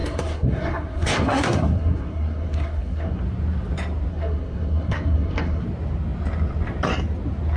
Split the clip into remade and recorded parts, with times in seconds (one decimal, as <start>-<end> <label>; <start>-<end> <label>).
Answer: 0.0-3.2 remade; 3.2-4.1 recorded; 4.1-5.6 remade; 5.6-7.6 recorded